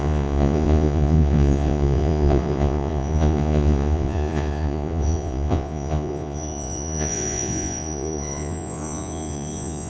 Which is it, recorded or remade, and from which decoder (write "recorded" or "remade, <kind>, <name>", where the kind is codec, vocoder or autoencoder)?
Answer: remade, vocoder, Vocos